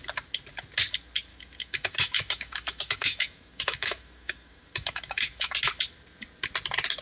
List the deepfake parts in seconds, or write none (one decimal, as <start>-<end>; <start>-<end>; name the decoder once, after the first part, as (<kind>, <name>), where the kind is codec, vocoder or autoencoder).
1.3-5.5 (autoencoder, DAC-VAE)